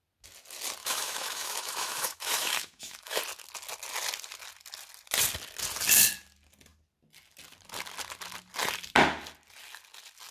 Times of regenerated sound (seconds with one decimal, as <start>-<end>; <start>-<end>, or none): 0.8-3.2